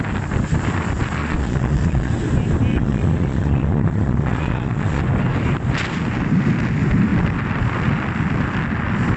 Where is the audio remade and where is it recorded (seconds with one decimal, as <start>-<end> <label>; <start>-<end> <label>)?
0.0-1.2 recorded; 1.2-2.1 remade; 2.1-2.7 recorded; 2.7-5.0 remade; 5.0-9.2 recorded